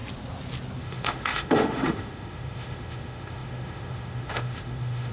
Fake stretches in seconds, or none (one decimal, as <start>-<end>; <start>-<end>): 0.8-5.1